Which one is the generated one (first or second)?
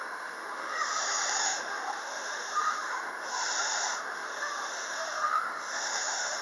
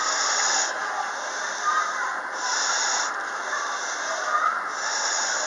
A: first